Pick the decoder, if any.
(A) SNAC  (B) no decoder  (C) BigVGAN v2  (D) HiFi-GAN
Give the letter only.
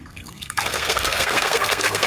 A